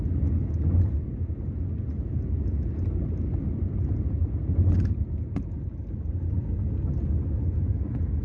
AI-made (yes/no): no